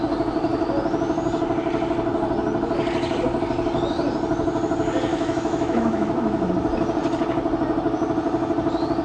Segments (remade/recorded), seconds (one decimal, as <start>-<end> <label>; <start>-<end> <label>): 0.0-5.1 recorded; 5.1-6.5 remade; 6.5-9.0 recorded